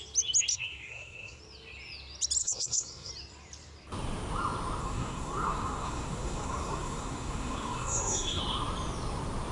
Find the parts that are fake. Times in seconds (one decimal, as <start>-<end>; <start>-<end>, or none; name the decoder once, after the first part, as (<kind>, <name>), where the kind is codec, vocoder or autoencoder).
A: 0.5-1.4 (codec, SNAC); 2.4-3.1; 4.8-8.4